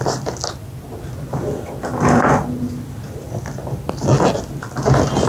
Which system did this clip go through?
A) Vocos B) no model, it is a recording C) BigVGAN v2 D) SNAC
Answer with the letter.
B